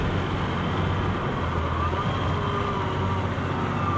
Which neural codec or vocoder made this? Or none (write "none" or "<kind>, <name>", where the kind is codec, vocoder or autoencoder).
none